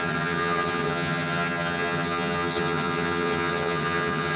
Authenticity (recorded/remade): remade